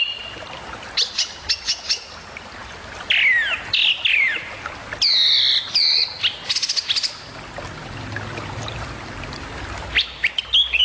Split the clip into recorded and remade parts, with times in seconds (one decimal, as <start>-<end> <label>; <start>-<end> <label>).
0.0-10.8 recorded